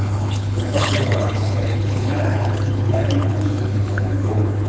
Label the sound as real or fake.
fake